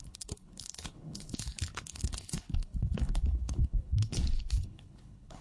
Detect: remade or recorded remade